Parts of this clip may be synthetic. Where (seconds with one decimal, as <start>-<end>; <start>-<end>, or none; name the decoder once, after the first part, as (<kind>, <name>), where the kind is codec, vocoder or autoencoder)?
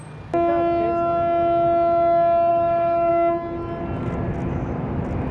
2.5-3.1 (codec, DAC)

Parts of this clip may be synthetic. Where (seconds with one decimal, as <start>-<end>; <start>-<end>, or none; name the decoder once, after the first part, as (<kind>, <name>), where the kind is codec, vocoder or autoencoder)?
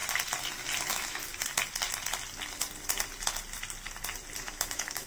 0.8-1.3 (autoencoder, DAC-VAE); 4.4-5.1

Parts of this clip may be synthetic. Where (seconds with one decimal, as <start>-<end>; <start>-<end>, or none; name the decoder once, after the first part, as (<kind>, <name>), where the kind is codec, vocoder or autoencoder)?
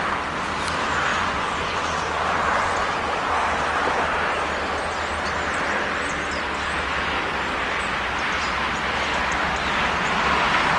1.1-3.3 (vocoder, Vocos)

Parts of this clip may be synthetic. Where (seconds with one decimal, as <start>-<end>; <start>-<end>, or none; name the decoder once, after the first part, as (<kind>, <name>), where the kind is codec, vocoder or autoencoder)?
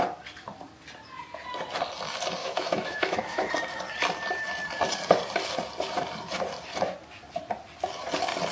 2.4-3.5 (autoencoder, DAC-VAE)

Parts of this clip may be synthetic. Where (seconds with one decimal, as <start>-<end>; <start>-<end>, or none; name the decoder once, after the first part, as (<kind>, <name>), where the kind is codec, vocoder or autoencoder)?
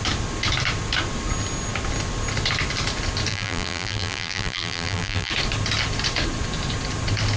3.3-5.3 (vocoder, BigVGAN v2)